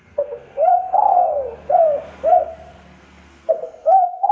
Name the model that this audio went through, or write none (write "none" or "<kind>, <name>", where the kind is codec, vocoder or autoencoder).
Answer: codec, SNAC